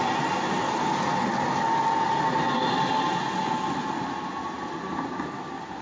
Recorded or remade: recorded